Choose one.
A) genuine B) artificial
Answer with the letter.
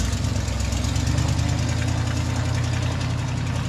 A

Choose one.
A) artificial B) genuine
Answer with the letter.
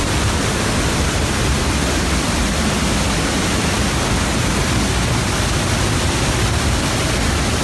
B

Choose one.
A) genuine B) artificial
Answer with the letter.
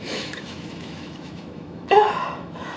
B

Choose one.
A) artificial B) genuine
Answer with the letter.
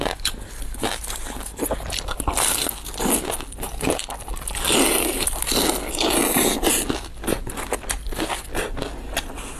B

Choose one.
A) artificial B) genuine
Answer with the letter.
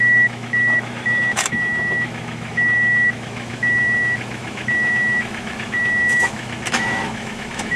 A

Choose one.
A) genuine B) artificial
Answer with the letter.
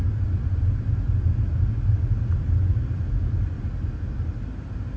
A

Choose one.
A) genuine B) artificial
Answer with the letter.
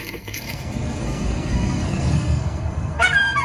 B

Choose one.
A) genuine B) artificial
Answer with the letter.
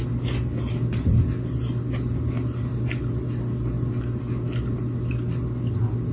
A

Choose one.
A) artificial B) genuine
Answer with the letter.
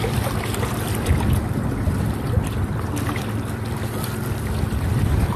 A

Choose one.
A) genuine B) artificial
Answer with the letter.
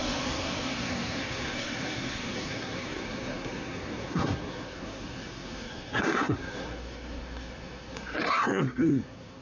B